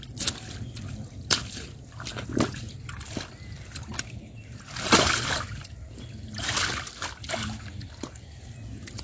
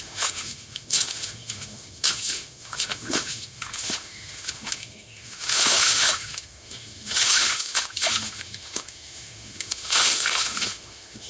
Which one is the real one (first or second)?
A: first